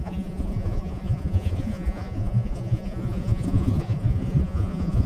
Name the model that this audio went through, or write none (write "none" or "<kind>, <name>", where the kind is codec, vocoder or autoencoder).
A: vocoder, Vocos